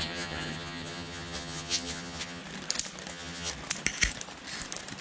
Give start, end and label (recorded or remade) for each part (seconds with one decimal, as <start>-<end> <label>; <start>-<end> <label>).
0.0-2.4 remade; 2.4-3.1 recorded; 3.1-3.5 remade; 3.5-5.0 recorded